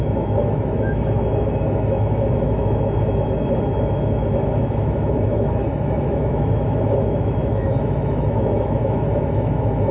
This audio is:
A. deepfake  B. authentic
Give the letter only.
A